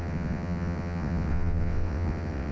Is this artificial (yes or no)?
yes